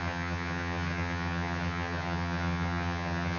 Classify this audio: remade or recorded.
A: remade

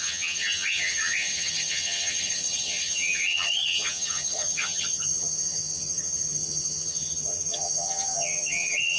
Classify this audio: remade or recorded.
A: remade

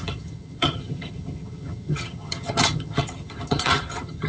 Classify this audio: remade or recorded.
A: remade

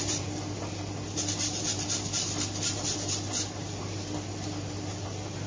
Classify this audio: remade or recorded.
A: recorded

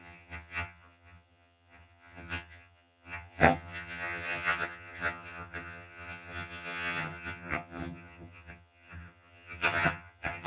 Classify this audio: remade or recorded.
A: remade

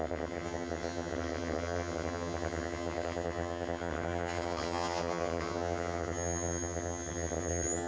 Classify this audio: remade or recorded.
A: remade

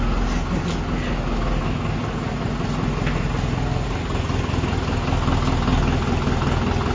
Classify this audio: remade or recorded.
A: recorded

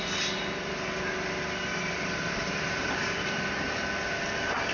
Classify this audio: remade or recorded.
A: recorded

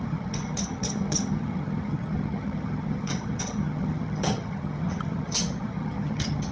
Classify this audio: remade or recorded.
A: remade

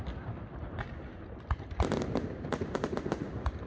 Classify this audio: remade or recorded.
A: recorded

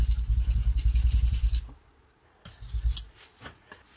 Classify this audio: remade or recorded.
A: recorded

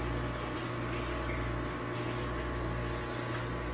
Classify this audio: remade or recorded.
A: recorded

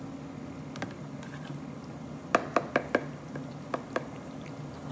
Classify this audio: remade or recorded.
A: recorded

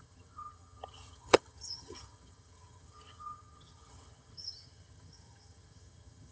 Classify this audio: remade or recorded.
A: remade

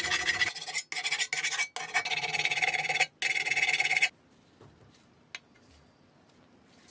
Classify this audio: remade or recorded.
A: recorded